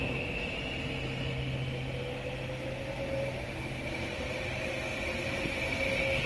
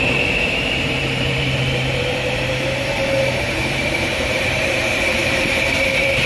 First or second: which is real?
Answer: first